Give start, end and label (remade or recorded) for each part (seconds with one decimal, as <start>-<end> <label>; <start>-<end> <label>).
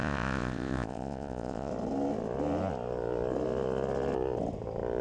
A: 0.0-1.7 remade; 1.7-5.0 recorded